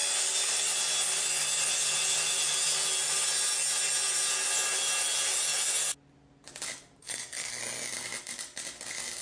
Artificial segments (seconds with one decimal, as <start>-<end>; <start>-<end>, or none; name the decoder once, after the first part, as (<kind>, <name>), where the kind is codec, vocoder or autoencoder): 7.0-7.6 (codec, SNAC)